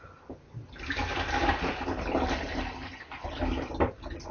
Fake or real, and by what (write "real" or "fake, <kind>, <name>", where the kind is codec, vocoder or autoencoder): real